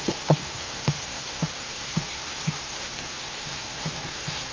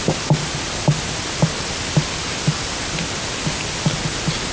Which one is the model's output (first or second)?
first